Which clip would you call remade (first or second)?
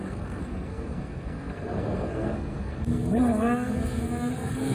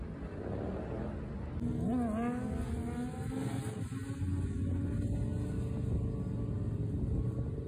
first